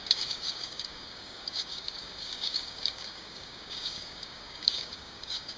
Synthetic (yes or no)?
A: yes